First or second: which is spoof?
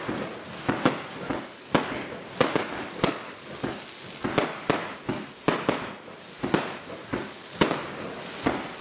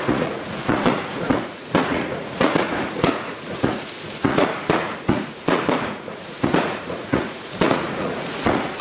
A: second